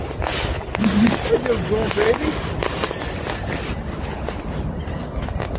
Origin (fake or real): real